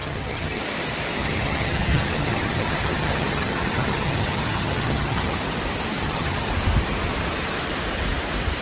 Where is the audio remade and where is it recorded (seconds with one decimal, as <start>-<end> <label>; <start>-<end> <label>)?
0.0-0.6 remade; 0.6-1.2 recorded; 1.2-5.4 remade; 5.4-6.0 recorded; 6.0-6.5 remade; 6.5-8.6 recorded